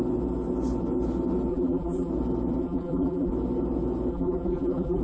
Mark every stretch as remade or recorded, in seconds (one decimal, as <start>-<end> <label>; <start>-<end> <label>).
0.0-1.5 recorded; 1.5-2.1 remade; 2.1-2.6 recorded; 2.6-3.3 remade; 3.3-4.1 recorded; 4.1-5.0 remade